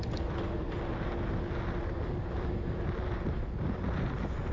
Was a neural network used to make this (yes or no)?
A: no